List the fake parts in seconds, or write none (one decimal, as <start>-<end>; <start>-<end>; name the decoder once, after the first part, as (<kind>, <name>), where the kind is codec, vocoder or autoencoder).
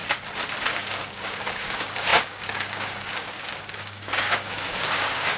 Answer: 0.6-5.4 (codec, DAC)